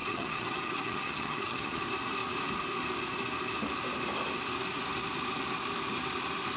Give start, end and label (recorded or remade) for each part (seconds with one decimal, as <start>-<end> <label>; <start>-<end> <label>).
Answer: 0.0-1.8 remade; 1.8-6.6 recorded